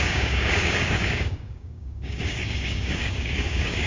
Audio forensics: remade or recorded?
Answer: remade